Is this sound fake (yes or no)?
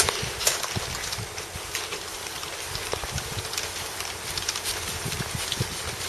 no